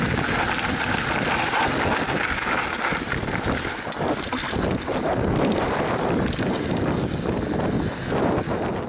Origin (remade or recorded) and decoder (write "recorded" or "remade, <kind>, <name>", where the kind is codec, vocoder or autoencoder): recorded